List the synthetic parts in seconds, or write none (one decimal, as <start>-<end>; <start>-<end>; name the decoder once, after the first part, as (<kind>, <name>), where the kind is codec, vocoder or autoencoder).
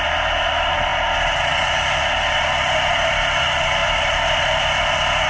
3.8-5.3 (vocoder, BigVGAN v2)